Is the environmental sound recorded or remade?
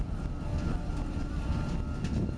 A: recorded